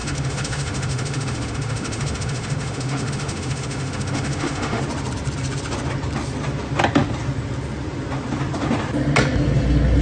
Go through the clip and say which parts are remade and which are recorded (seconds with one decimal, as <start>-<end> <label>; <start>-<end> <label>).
0.0-4.8 remade; 4.8-10.0 recorded